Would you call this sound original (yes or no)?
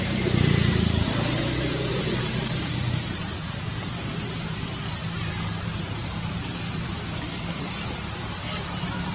no